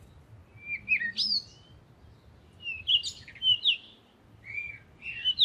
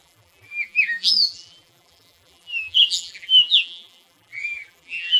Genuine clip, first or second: first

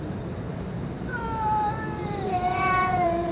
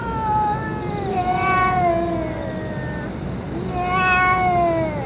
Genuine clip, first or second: second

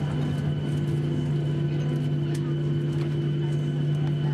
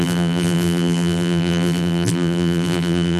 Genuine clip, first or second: first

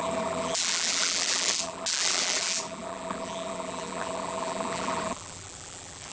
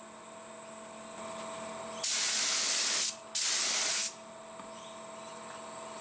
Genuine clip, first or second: second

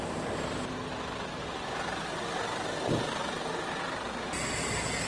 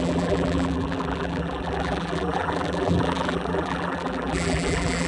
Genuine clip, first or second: first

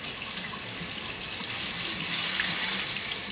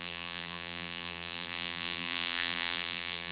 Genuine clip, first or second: first